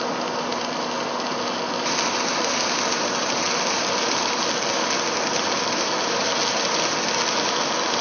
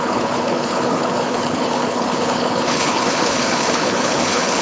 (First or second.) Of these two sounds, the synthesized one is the second